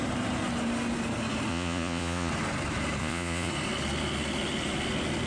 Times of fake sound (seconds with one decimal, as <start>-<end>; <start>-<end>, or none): 1.5-2.3; 3.0-3.5